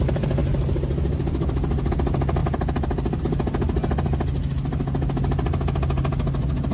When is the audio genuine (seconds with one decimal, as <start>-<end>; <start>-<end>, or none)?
0.0-6.7